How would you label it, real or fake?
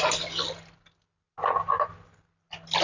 real